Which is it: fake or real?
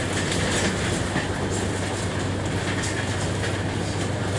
real